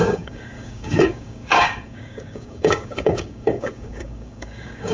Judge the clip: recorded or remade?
remade